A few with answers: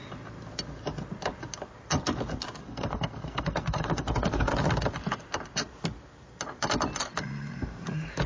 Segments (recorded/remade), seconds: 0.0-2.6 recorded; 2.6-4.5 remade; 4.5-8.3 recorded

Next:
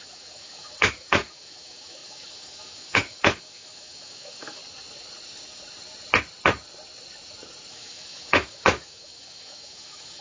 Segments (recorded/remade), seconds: 0.0-4.6 remade; 4.6-7.7 recorded; 7.7-10.2 remade

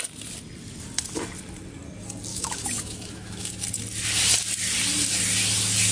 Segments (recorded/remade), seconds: 0.0-2.3 recorded; 2.3-3.5 remade; 3.5-5.9 recorded

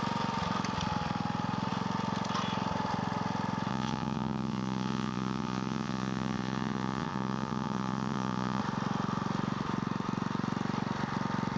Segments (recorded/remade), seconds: 0.0-3.7 recorded; 3.7-8.6 remade; 8.6-11.6 recorded

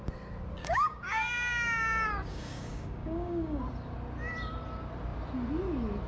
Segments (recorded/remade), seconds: 0.0-0.6 recorded; 0.6-3.6 remade; 3.6-6.1 recorded